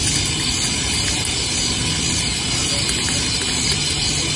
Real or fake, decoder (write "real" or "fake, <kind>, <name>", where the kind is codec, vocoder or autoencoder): real